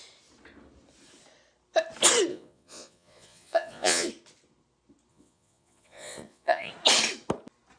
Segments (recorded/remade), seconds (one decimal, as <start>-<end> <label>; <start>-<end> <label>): 0.0-2.3 recorded; 2.3-4.1 remade; 4.1-5.1 recorded; 5.1-6.7 remade; 6.7-7.8 recorded

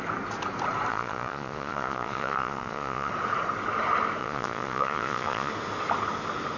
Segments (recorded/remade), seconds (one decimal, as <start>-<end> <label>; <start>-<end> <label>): 0.0-0.9 recorded; 0.9-3.1 remade; 3.1-4.2 recorded; 4.2-5.5 remade; 5.5-6.6 recorded

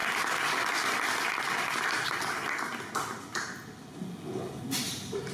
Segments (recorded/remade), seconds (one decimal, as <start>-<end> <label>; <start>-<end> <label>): 0.0-5.3 recorded

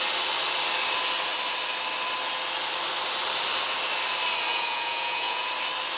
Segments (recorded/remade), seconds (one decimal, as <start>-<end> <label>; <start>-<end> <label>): 0.0-4.5 recorded; 4.5-5.5 remade; 5.5-6.0 recorded

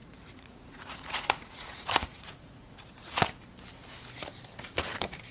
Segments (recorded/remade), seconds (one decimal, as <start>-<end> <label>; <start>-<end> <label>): 0.0-3.2 remade; 3.2-5.3 recorded

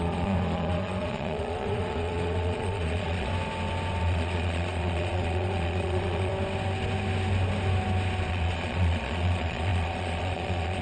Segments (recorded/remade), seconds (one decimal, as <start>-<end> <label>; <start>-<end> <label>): 0.0-3.3 remade; 3.3-4.0 recorded; 4.0-6.3 remade; 6.3-8.3 recorded; 8.3-10.8 remade

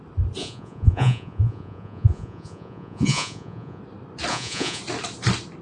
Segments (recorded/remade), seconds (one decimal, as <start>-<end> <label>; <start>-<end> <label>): 0.0-0.4 recorded; 0.4-3.8 remade; 3.8-4.3 recorded; 4.3-4.8 remade; 4.8-5.6 recorded

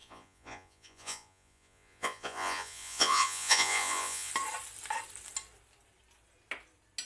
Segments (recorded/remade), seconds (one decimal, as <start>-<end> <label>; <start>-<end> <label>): 0.0-4.3 remade; 4.3-7.1 recorded